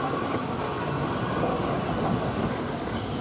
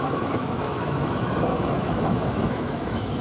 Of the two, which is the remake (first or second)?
second